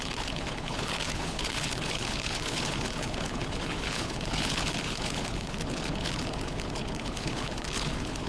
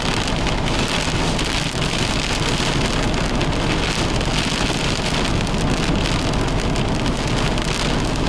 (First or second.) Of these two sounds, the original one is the second